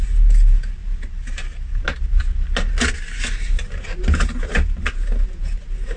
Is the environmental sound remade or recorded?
recorded